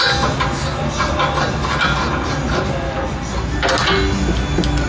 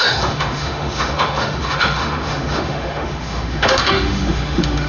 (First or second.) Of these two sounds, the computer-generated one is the second